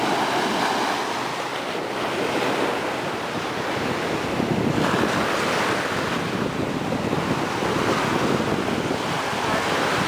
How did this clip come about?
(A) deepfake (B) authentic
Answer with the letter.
B